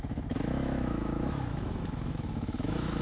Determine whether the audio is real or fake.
fake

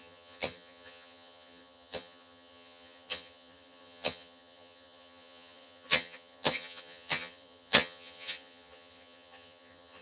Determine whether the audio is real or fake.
fake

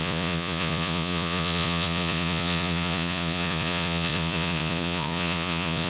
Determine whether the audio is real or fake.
fake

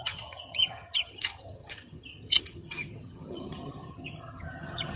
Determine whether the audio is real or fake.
fake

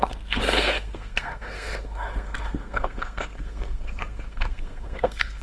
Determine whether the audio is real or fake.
fake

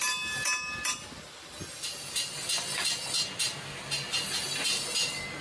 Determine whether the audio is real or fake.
real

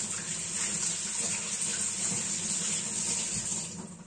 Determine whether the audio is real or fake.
real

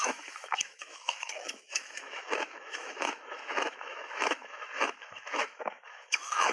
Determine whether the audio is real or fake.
fake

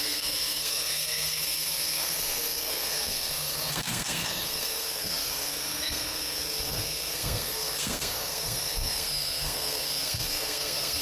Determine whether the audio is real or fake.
fake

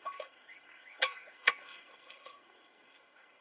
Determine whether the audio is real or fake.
fake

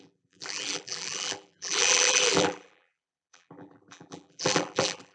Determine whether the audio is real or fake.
fake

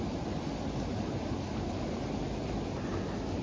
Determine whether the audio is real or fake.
real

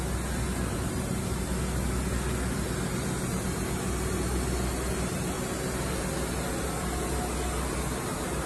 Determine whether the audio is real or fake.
real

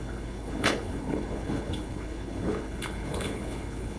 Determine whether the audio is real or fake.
fake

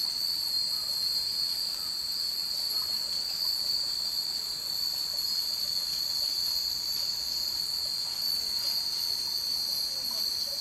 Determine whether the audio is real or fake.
fake